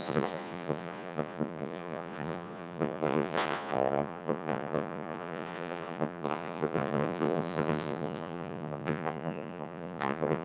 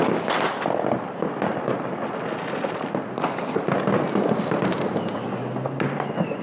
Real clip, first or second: second